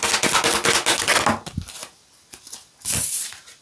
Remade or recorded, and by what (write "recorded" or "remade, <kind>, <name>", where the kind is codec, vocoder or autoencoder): recorded